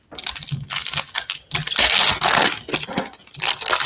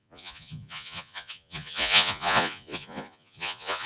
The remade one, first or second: second